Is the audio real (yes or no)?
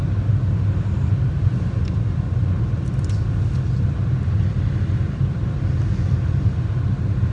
yes